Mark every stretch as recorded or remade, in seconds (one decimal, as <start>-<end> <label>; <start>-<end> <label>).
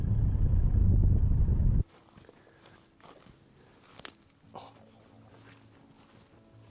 0.0-6.7 recorded